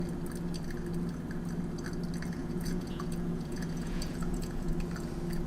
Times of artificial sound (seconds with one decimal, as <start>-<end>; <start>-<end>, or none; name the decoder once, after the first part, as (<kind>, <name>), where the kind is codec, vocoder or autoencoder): 2.4-4.7 (vocoder, Vocos)